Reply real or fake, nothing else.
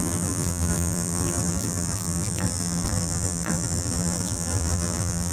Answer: fake